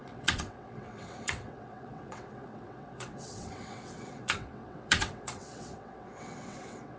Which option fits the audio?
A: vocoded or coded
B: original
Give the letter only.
A